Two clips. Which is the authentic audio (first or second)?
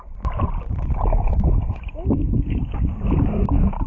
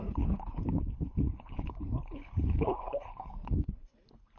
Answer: first